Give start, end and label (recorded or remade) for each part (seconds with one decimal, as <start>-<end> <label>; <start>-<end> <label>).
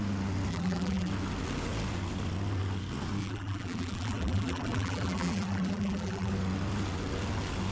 0.0-0.5 recorded; 0.5-1.1 remade; 1.1-3.2 recorded; 3.2-6.3 remade; 6.3-7.7 recorded